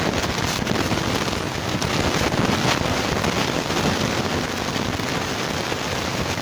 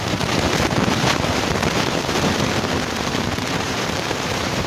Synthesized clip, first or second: second